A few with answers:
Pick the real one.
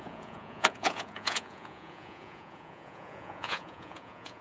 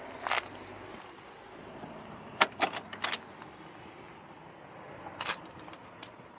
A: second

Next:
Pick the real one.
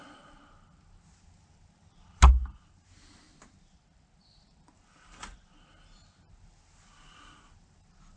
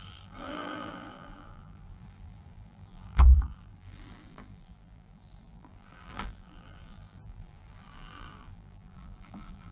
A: first